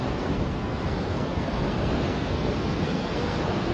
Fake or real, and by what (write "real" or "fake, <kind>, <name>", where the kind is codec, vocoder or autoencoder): fake, codec, SNAC